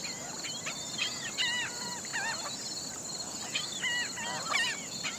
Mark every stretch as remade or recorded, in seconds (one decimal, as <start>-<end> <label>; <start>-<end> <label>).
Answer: 0.0-5.2 recorded